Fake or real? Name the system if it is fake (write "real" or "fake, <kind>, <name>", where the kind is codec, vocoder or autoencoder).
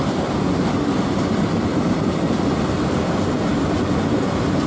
real